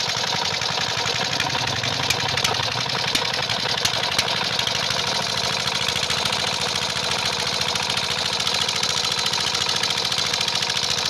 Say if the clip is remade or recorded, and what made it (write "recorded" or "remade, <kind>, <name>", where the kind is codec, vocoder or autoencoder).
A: recorded